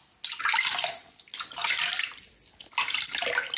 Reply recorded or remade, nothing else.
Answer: recorded